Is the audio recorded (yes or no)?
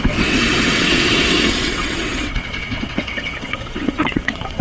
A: no